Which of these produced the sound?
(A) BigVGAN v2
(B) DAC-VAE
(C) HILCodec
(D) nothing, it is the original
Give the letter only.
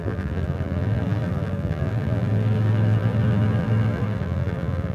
A